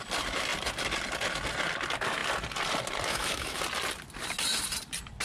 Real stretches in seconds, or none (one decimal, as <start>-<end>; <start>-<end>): 0.0-3.1; 3.6-5.2